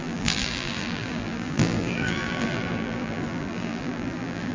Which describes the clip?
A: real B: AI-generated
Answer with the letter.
B